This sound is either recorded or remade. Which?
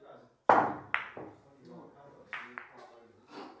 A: recorded